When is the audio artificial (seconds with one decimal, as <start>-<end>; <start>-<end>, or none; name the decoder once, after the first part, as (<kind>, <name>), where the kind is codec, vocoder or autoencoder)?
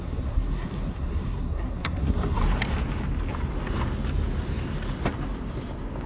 0.0-2.4 (codec, SNAC)